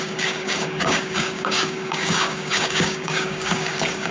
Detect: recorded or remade remade